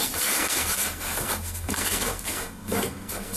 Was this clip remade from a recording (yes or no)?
yes